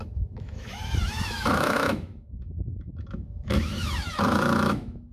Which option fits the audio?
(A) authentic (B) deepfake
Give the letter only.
B